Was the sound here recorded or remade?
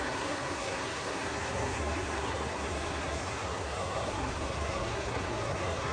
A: remade